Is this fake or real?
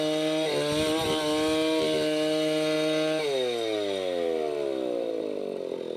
real